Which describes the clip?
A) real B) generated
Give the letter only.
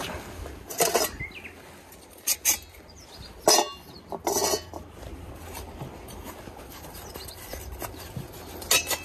A